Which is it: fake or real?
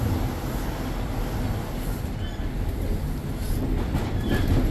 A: real